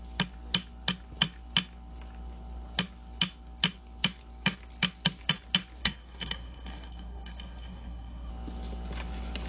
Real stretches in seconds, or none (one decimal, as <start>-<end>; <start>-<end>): 0.0-5.8; 8.3-9.5